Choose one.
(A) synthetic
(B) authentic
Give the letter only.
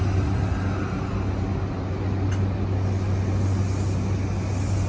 B